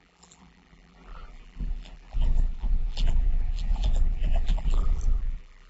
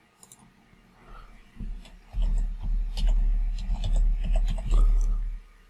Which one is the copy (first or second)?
first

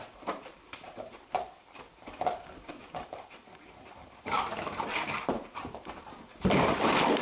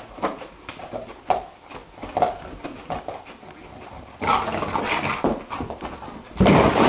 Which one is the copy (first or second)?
first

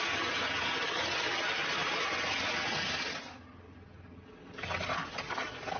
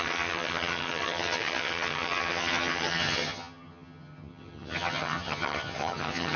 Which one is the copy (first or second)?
second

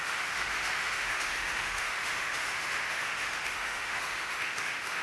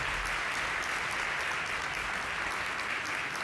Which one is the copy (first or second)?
first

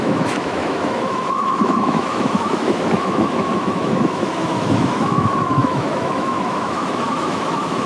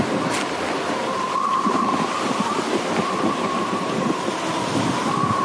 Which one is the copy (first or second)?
first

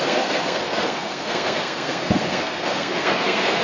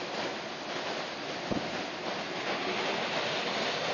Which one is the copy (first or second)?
first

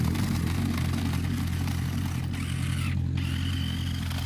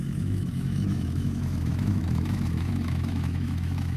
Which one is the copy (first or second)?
second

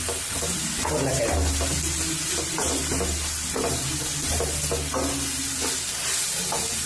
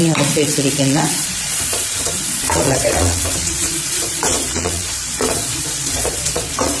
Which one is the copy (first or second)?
second